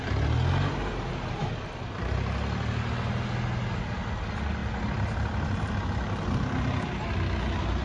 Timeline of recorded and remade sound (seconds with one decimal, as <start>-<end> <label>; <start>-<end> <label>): 0.0-7.8 recorded